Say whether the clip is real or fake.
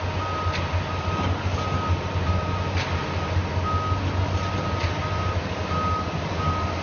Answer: real